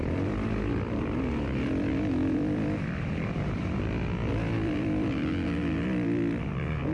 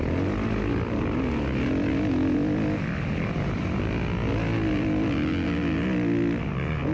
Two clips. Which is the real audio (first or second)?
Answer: second